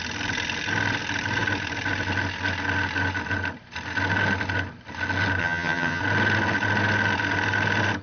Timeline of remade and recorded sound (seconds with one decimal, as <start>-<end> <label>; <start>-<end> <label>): 0.0-5.4 recorded; 5.4-6.0 remade; 6.0-8.0 recorded